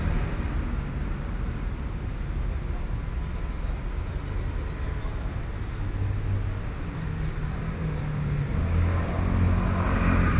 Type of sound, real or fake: real